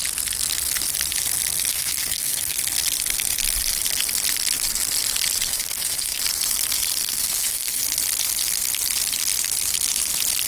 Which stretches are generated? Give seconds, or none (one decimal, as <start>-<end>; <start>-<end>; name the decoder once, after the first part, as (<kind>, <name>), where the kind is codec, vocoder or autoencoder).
1.7-2.6 (codec, SNAC); 5.5-6.2; 7.0-7.8